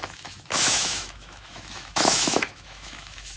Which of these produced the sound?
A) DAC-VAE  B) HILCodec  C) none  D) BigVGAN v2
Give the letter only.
A